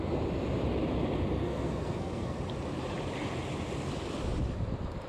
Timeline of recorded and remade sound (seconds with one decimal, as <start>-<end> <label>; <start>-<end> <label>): 0.0-1.4 recorded; 1.4-2.4 remade; 2.4-5.1 recorded